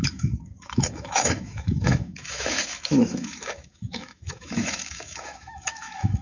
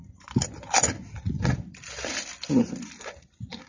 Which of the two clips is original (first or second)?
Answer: second